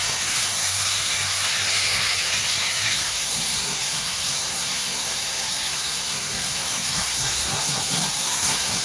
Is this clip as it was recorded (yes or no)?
no